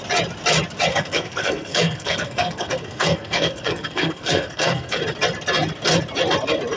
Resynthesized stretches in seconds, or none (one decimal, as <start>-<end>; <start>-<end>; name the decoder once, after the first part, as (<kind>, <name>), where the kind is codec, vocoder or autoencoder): 0.9-5.0 (codec, SNAC)